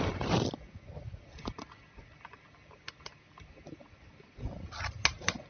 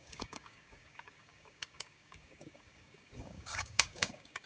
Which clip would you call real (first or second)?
first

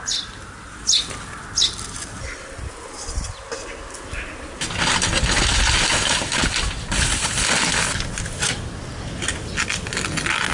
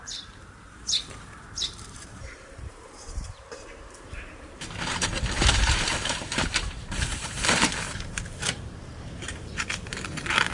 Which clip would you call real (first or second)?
first